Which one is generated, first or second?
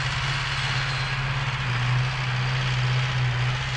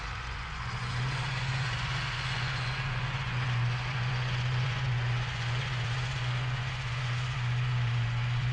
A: second